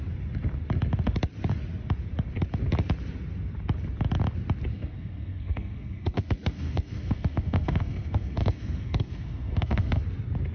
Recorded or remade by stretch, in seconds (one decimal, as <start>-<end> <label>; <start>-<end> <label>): 0.0-4.7 recorded; 4.7-10.0 remade; 10.0-10.5 recorded